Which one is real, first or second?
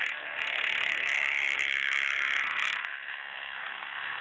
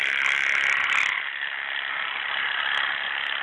second